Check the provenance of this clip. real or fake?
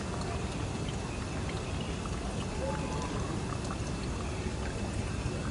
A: real